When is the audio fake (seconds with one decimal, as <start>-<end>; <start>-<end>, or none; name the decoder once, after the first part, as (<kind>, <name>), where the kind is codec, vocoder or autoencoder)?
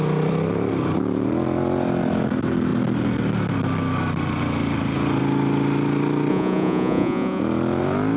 6.3-7.4 (vocoder, Vocos)